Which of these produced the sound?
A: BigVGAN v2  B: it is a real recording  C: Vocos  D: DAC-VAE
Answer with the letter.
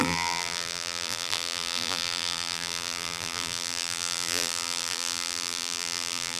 A